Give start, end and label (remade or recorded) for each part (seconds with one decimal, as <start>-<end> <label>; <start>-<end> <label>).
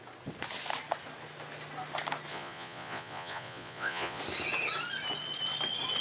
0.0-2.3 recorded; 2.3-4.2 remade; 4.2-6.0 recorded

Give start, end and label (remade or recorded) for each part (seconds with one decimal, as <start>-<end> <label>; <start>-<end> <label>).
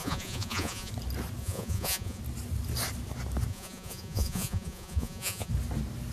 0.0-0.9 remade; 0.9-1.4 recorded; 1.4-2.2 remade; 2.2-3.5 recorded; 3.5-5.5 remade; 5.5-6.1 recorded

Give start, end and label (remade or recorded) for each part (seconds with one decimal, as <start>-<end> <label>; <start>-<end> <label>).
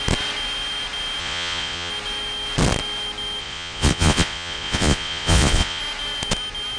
0.0-1.2 recorded; 1.2-1.9 remade; 1.9-3.4 recorded; 3.4-5.8 remade; 5.8-6.8 recorded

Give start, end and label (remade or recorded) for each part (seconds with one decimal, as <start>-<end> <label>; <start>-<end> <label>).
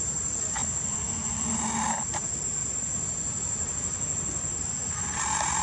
0.0-5.6 recorded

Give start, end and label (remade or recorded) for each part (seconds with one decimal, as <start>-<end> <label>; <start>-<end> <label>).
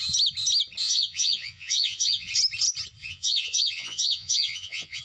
0.0-0.8 recorded; 0.8-2.3 remade; 2.3-3.0 recorded; 3.0-5.0 remade